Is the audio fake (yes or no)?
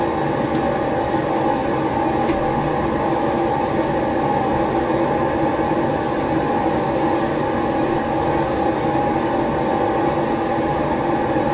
no